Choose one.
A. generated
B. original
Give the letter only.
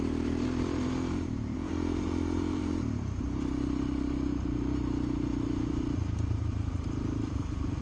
A